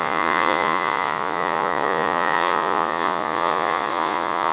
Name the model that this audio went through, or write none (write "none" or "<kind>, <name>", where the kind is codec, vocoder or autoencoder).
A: vocoder, Vocos